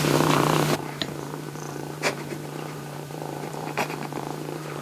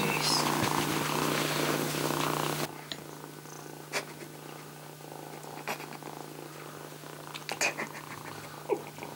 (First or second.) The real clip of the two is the second